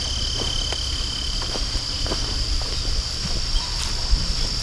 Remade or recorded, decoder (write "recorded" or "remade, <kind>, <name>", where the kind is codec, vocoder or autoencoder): recorded